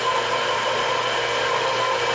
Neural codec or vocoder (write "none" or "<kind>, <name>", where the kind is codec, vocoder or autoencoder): none